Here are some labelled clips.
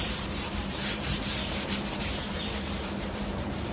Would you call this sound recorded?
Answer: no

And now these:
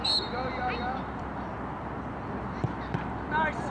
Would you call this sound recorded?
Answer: no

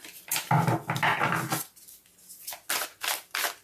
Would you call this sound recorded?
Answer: yes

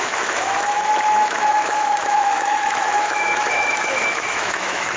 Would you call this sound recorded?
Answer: no